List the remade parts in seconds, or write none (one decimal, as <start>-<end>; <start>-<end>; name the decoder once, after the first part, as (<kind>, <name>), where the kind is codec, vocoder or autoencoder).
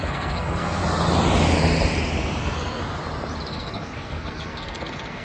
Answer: 0.0-0.8 (codec, SNAC); 2.4-2.8; 3.5-5.2